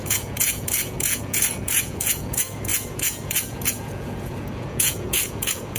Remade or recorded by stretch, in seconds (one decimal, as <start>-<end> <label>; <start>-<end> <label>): 0.0-5.8 remade

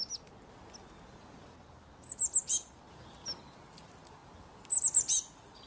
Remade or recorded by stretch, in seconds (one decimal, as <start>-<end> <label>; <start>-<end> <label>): 0.0-5.7 recorded

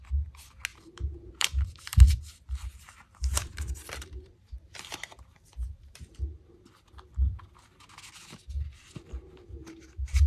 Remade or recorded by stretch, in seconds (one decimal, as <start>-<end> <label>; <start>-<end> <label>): 0.0-0.7 recorded; 0.7-2.2 remade; 2.2-2.7 recorded; 2.7-6.1 remade; 6.1-9.6 recorded; 9.6-10.3 remade

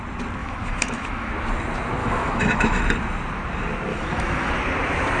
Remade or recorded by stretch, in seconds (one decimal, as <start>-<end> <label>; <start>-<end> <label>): 0.0-0.4 recorded; 0.4-1.3 remade; 1.3-2.0 recorded; 2.0-2.8 remade; 2.8-3.9 recorded; 3.9-4.5 remade; 4.5-5.2 recorded

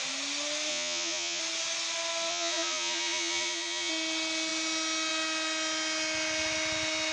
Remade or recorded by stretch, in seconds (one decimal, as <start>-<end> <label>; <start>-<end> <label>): 0.0-0.7 recorded; 0.7-1.4 remade; 1.4-2.3 recorded; 2.3-3.9 remade; 3.9-7.1 recorded

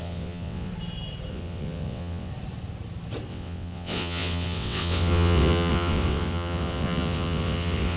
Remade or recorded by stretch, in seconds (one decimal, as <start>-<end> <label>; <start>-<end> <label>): 0.0-0.7 remade; 0.7-1.3 recorded; 1.3-2.3 remade; 2.3-3.3 recorded; 3.3-8.0 remade

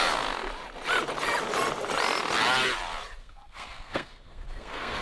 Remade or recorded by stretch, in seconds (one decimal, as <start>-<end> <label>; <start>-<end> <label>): 0.0-3.2 recorded; 3.2-5.0 remade

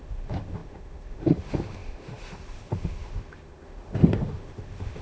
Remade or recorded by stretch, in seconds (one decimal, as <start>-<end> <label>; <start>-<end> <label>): 0.0-5.0 remade